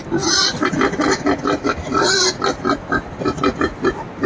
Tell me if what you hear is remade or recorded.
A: recorded